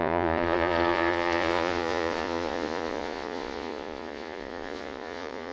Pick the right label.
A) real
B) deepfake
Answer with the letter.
B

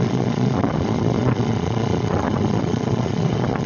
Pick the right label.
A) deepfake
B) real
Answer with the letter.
A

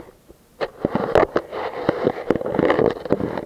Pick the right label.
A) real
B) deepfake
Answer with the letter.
A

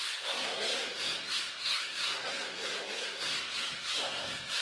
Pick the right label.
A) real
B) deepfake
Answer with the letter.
B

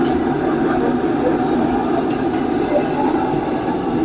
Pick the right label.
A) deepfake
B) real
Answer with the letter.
B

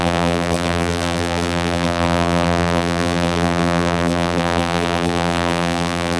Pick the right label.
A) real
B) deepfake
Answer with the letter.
B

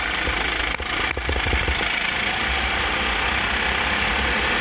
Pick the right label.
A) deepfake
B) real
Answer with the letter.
B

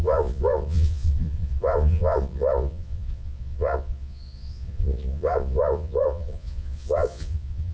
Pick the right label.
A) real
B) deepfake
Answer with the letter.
B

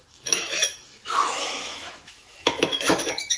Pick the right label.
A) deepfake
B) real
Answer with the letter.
A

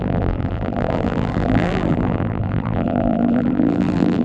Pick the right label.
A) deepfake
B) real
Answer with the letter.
A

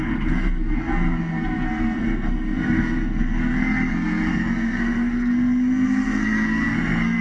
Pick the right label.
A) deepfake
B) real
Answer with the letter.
A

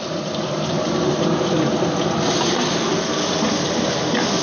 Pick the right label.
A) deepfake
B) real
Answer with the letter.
A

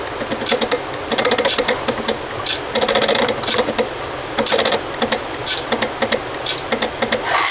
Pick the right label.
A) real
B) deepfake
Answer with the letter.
A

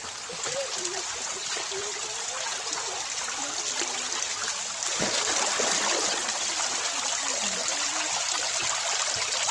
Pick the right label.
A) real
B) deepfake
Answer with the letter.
A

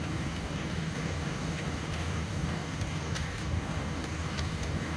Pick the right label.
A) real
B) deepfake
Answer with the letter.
B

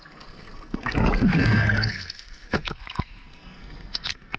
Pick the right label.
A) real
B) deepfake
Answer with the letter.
B